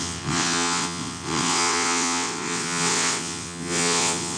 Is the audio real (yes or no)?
no